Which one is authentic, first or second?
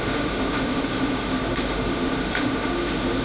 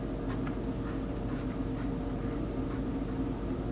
second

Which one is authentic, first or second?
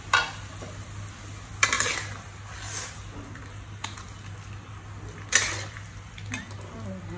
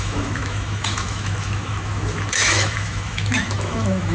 first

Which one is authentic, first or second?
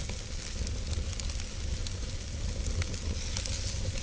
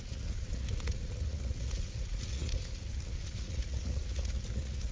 first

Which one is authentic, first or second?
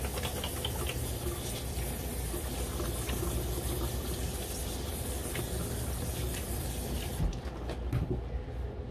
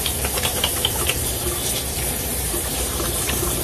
first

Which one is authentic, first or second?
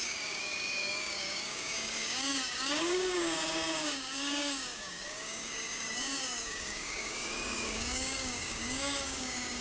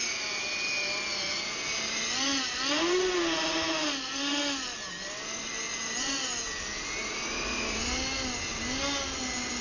second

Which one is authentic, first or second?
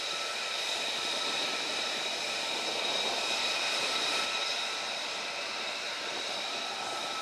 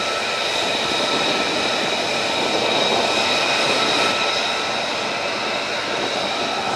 second